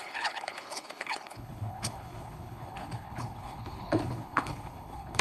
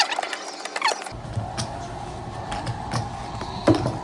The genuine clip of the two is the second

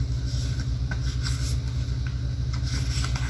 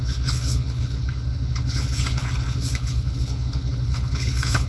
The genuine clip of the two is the first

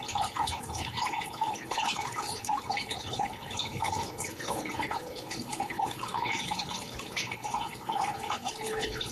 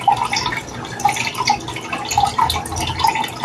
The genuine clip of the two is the second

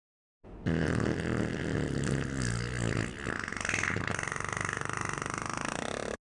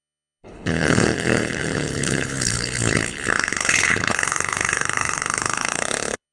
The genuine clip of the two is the first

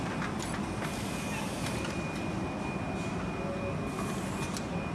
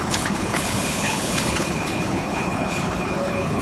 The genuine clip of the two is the first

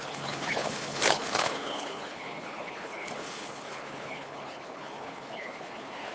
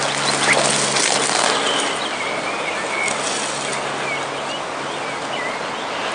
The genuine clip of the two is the second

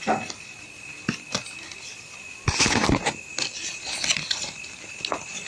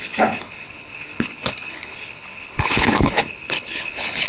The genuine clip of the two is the first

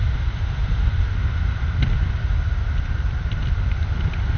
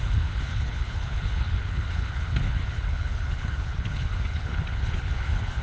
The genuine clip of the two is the first